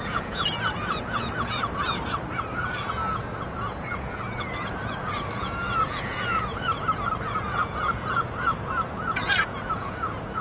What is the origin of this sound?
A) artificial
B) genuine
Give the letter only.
A